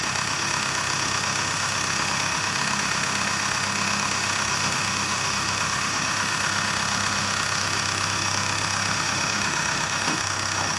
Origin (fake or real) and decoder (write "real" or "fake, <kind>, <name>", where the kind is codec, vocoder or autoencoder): fake, autoencoder, DAC-VAE